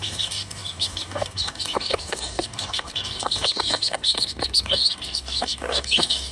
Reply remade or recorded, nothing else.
remade